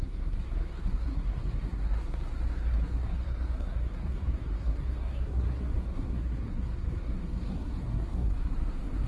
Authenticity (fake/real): fake